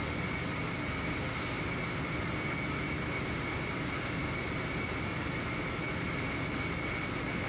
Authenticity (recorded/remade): recorded